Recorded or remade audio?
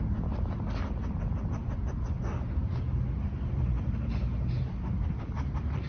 recorded